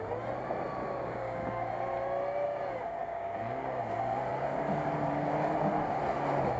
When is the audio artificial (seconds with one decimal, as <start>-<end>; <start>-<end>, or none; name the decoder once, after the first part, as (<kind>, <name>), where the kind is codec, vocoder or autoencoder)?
0.8-1.7 (codec, DAC); 3.1-3.8